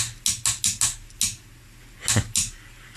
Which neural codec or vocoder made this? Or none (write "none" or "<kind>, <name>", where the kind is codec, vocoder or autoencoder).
none